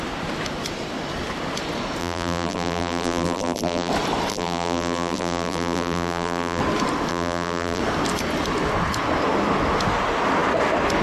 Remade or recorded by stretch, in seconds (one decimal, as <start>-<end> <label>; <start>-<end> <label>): 0.0-2.0 recorded; 2.0-3.9 remade; 3.9-4.3 recorded; 4.3-6.6 remade; 6.6-7.1 recorded; 7.1-7.8 remade; 7.8-11.0 recorded